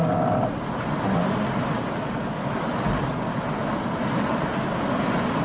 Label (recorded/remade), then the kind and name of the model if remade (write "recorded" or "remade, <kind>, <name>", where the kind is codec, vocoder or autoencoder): recorded